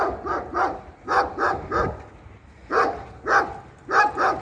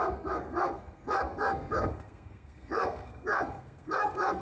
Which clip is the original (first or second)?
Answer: first